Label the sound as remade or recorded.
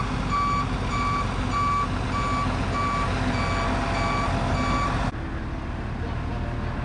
recorded